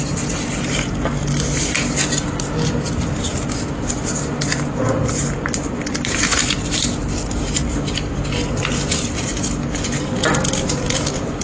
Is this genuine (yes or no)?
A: yes